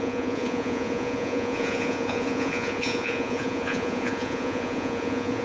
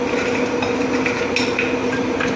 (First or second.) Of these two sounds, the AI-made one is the first